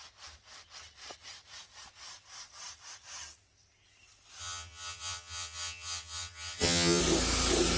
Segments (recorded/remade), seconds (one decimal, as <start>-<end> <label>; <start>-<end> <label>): 0.0-4.4 recorded; 4.4-7.0 remade; 7.0-7.8 recorded